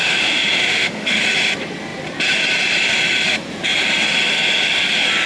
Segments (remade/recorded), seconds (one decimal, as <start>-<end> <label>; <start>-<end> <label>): 0.0-1.2 remade; 1.2-5.3 recorded